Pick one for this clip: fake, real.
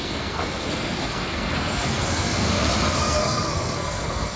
fake